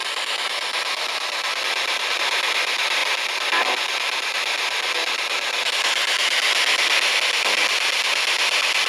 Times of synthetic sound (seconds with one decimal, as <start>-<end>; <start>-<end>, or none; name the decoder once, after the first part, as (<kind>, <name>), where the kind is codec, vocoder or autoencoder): none

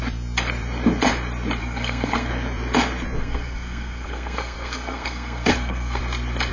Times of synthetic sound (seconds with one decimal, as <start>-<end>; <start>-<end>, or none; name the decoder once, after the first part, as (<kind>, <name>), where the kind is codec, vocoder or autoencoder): 1.6-2.3 (codec, SNAC); 3.2-6.0